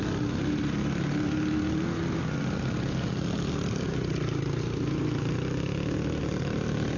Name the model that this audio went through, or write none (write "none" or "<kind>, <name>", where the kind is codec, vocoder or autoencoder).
none